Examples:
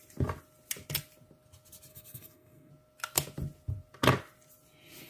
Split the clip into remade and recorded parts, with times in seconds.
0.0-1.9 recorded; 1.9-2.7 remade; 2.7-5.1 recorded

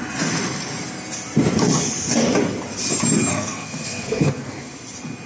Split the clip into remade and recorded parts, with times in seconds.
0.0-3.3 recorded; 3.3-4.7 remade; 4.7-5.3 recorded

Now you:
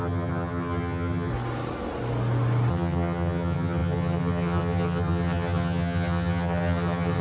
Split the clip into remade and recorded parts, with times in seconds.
0.0-1.3 remade; 1.3-2.7 recorded; 2.7-7.2 remade